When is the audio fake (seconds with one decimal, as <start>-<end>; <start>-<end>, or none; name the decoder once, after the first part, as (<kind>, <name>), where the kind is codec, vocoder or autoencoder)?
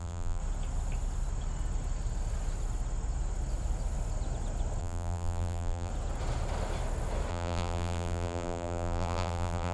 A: 0.0-0.4 (vocoder, BigVGAN v2); 4.8-5.9; 7.3-9.7